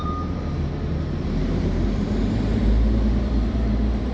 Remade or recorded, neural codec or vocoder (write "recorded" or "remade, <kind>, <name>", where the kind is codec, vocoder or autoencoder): remade, vocoder, BigVGAN v2